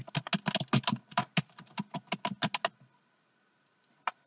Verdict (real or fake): real